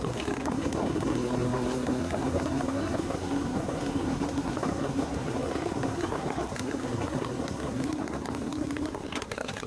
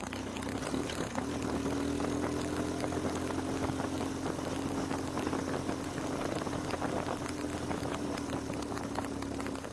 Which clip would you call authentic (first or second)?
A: second